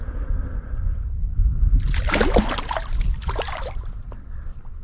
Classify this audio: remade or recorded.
recorded